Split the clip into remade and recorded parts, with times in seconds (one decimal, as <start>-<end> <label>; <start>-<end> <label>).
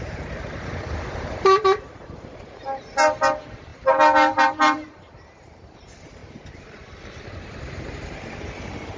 0.0-6.2 remade; 6.2-7.6 recorded; 7.6-9.0 remade